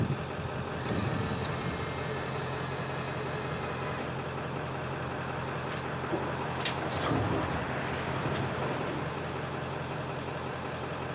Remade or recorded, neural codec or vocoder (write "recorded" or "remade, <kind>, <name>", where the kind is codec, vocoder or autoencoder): recorded